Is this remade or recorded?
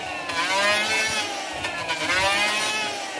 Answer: recorded